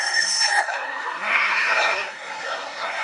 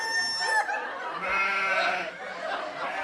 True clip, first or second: second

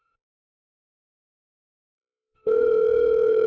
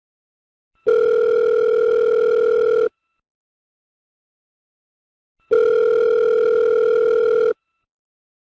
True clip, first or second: second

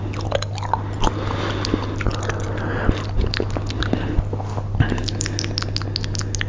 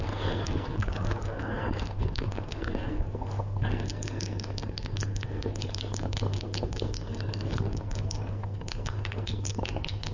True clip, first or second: first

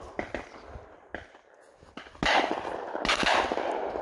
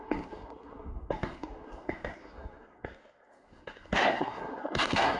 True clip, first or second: first